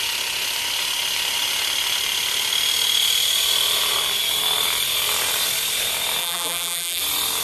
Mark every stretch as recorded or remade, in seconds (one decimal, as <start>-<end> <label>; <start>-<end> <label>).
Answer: 0.0-6.2 recorded; 6.2-7.0 remade; 7.0-7.4 recorded